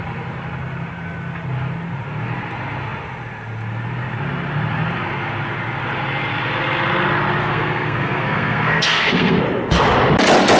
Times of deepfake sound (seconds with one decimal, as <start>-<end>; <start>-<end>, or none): 7.4-9.4